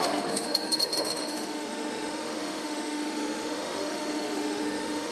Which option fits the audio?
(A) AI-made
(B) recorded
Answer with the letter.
A